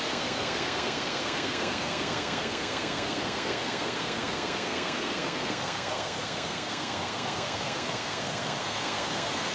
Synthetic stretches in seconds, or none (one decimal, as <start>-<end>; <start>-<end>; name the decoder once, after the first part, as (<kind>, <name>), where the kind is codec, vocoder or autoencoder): 0.0-9.5 (codec, SNAC)